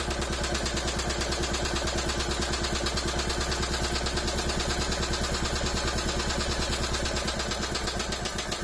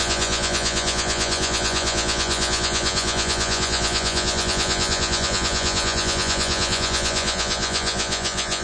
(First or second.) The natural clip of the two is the first